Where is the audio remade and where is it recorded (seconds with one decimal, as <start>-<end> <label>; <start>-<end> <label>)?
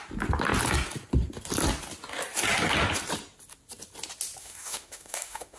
0.0-4.4 recorded; 4.4-5.6 remade